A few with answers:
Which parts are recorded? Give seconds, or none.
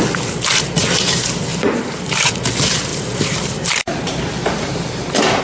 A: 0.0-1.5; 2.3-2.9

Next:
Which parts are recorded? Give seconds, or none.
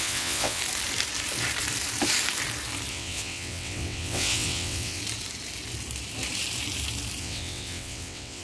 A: 0.6-2.9; 5.0-7.2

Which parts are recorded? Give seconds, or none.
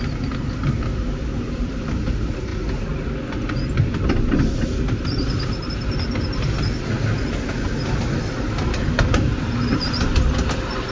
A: 0.0-10.9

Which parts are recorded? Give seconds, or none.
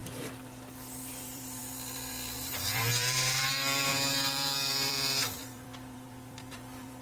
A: 0.0-1.1